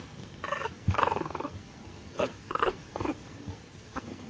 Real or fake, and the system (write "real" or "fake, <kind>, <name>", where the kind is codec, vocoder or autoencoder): fake, codec, SNAC